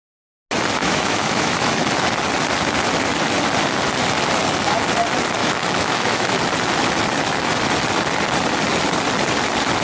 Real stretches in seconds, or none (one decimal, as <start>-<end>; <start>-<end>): 0.0-0.8; 1.7-5.4; 6.4-9.8